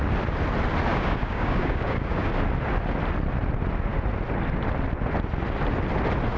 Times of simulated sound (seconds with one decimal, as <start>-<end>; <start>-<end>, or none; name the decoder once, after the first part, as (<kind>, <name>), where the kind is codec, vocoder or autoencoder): 0.9-2.3 (codec, DAC)